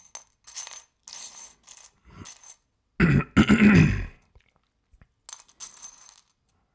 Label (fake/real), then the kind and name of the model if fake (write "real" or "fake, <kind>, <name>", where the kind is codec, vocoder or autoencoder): real